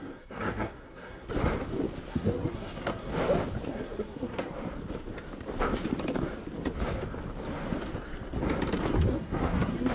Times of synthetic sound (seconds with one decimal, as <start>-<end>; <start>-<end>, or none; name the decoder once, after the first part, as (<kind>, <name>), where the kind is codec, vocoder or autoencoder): 0.0-1.3 (codec, SNAC); 2.1-3.1; 3.7-4.5; 9.1-9.9